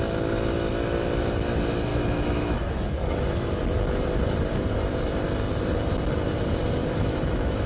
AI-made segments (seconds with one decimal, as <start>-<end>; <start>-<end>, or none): 1.9-3.6; 6.8-7.7